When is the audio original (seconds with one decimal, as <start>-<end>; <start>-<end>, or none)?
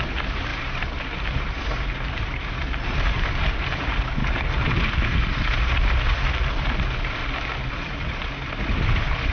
7.2-7.7